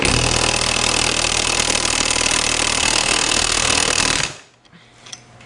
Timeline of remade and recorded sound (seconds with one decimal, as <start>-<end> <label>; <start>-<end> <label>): 0.0-2.8 recorded; 2.8-4.0 remade; 4.0-5.5 recorded